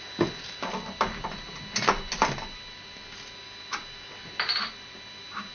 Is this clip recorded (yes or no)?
yes